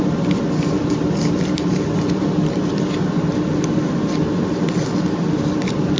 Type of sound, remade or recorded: recorded